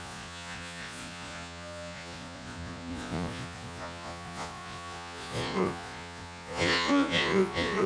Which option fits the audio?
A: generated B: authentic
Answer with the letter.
A